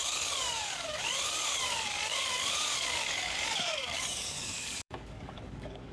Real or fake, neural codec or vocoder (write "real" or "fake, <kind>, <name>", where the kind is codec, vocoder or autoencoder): fake, codec, DAC